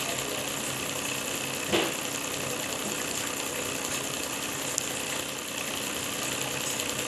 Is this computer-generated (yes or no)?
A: no